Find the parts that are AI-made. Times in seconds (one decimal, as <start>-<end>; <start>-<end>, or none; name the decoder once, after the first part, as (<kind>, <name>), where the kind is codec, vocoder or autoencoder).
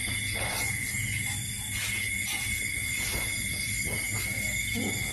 none